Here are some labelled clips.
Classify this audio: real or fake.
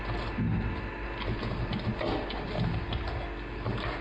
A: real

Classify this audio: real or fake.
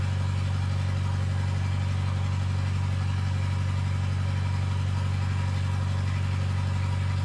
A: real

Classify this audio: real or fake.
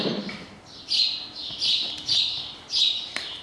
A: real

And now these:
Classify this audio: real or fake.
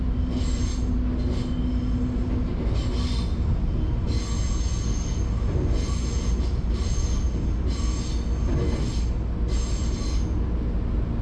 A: real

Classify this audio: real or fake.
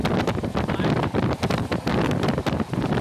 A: fake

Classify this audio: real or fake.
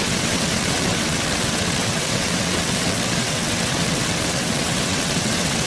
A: fake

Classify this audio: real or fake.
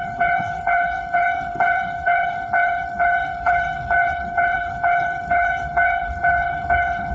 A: fake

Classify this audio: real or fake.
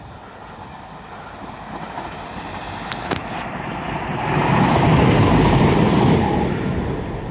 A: real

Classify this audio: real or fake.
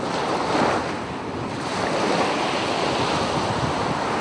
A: real